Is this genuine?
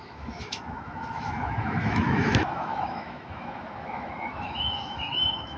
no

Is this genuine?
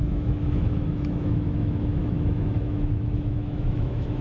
no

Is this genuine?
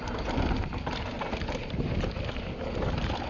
yes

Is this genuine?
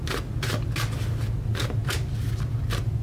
yes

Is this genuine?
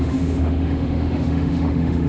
no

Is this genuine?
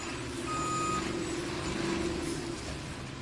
yes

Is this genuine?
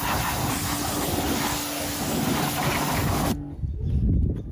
yes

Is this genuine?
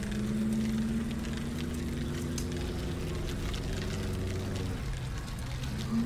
yes